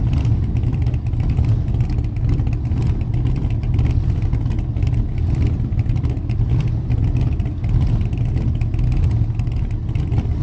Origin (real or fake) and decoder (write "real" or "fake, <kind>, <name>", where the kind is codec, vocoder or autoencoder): real